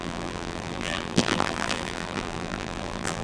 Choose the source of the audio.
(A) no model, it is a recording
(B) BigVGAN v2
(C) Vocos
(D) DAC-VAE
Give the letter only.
B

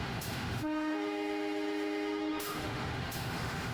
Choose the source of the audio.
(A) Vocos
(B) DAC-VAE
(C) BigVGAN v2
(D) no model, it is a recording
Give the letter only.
B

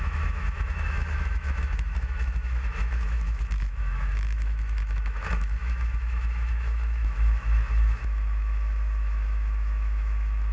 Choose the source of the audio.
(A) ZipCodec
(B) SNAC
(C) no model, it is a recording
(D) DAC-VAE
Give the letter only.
D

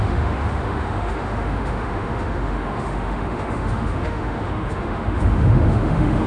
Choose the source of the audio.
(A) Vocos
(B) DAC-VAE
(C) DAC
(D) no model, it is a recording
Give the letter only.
B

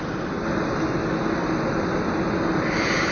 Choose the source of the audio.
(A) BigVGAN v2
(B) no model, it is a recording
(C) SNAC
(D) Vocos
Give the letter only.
B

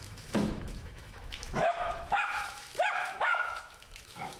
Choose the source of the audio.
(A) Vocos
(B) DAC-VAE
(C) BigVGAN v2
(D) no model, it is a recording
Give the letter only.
B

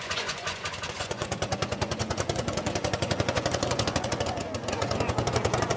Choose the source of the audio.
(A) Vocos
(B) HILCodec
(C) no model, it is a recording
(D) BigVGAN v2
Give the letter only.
A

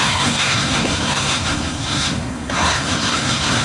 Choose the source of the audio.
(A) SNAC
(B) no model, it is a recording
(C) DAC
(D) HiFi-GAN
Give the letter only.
A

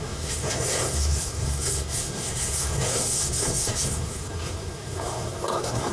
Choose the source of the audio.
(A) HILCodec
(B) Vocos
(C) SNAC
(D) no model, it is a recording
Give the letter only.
C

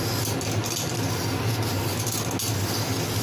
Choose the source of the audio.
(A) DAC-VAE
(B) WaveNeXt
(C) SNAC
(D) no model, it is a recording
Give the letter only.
D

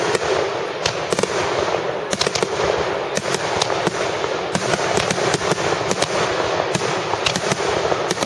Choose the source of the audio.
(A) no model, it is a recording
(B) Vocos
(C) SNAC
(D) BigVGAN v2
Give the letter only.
A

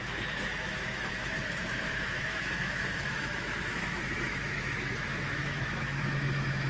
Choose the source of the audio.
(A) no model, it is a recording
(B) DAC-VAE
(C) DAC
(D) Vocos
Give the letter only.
B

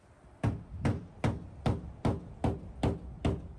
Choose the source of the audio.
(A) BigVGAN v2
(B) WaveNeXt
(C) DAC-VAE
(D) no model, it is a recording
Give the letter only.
D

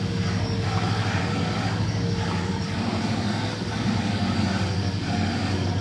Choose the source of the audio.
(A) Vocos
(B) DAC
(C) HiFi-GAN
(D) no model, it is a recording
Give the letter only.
B